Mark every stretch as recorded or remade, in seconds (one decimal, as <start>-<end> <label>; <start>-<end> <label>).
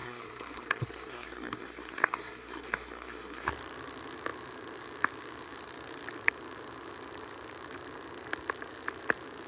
0.0-3.5 remade; 3.5-9.5 recorded